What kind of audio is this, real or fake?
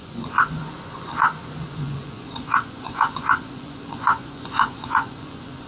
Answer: fake